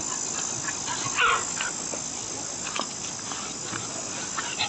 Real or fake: real